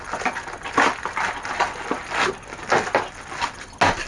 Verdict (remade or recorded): recorded